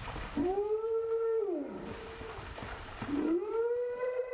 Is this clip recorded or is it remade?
remade